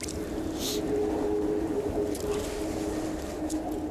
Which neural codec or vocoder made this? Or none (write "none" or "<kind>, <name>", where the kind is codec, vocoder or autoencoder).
none